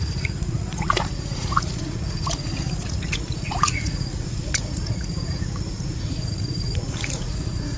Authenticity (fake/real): fake